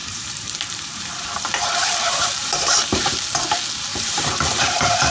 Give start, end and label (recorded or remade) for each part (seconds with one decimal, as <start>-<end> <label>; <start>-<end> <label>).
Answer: 0.0-3.1 remade; 3.1-3.9 recorded; 3.9-5.1 remade